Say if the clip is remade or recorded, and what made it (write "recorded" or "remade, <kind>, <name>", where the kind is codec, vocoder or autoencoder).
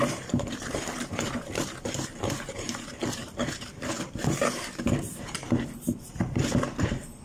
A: remade, vocoder, BigVGAN v2